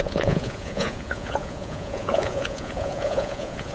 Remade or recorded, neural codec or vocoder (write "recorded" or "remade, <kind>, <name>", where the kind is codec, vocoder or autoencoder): remade, vocoder, Vocos